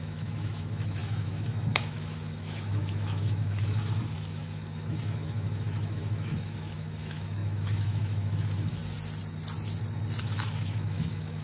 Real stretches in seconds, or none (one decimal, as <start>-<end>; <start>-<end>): 8.8-10.2